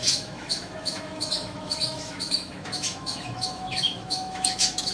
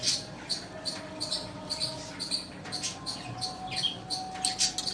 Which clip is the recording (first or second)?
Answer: second